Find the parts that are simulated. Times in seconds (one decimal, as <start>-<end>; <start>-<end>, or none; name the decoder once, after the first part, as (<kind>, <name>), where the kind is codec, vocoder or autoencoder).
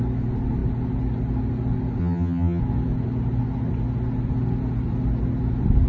2.0-2.6 (vocoder, HiFi-GAN)